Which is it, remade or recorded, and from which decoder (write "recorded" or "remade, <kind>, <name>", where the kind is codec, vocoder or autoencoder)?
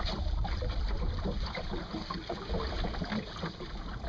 recorded